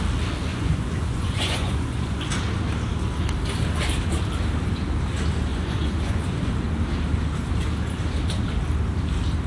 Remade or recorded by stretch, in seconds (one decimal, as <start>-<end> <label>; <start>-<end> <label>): 0.0-0.5 recorded; 0.5-2.2 remade; 2.2-5.5 recorded; 5.5-6.5 remade; 6.5-9.5 recorded